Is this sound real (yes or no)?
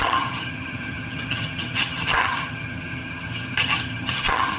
no